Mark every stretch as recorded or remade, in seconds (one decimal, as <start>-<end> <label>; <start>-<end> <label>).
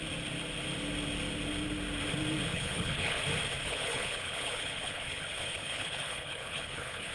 0.0-2.5 recorded; 2.5-3.2 remade; 3.2-3.6 recorded; 3.6-7.1 remade